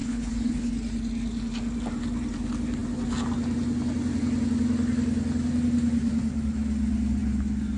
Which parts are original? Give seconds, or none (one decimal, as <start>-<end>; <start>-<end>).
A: 0.7-7.8